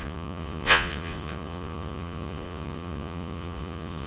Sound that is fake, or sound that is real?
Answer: fake